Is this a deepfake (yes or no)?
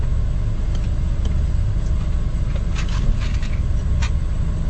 no